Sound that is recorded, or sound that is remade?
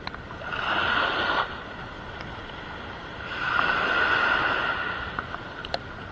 recorded